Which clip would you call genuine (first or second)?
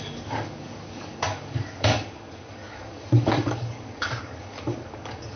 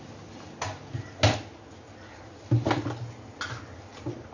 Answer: second